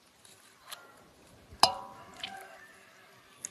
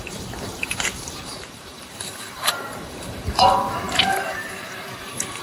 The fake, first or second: second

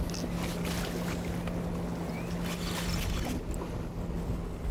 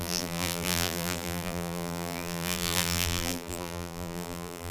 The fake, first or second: second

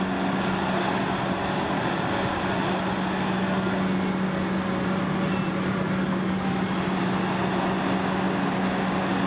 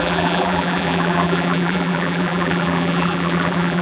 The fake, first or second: second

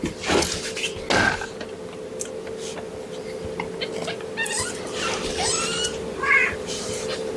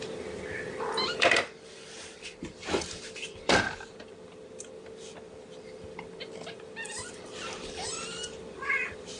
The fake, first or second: second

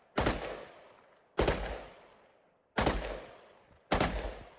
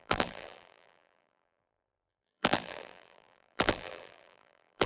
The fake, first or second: second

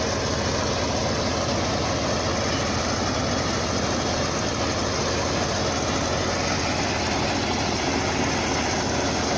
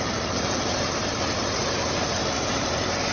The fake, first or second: second